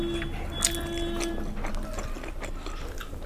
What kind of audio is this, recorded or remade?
recorded